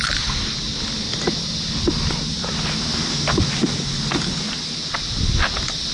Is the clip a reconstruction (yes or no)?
no